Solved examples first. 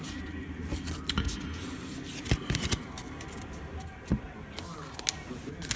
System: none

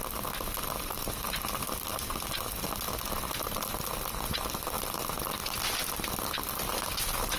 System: none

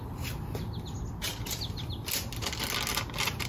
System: none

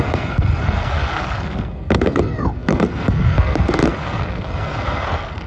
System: codec, SNAC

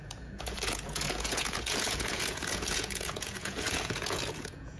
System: vocoder, Vocos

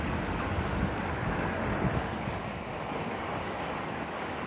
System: codec, DAC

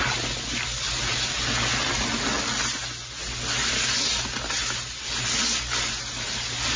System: none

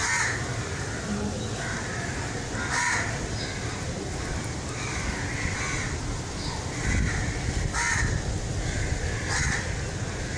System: none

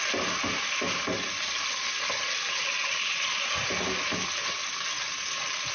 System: none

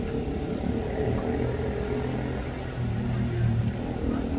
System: none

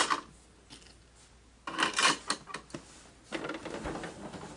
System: none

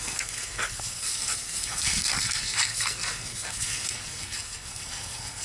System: codec, SNAC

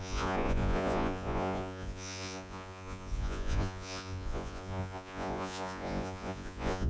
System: vocoder, Vocos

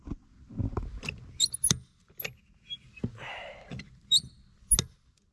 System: none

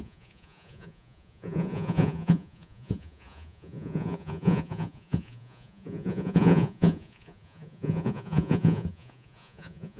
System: vocoder, Vocos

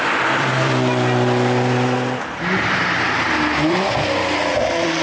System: vocoder, BigVGAN v2